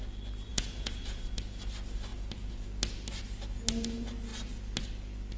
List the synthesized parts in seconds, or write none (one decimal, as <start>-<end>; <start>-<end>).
0.5-1.2